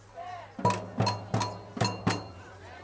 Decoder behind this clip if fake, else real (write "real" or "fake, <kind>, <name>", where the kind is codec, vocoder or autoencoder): real